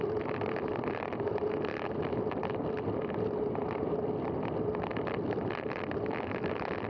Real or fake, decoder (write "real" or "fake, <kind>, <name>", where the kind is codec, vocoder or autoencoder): fake, vocoder, BigVGAN v2